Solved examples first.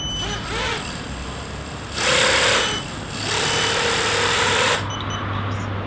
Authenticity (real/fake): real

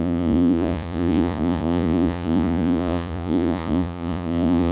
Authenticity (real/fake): fake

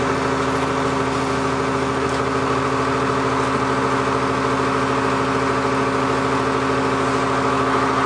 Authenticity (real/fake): real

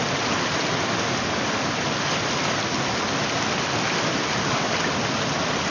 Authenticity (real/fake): real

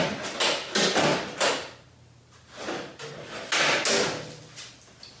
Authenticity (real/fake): real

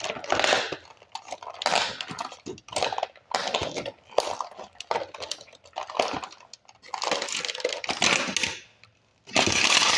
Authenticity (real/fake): real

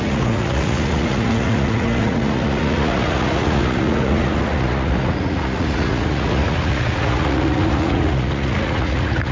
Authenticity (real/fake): fake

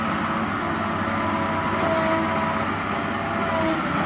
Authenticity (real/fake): real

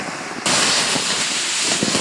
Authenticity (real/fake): real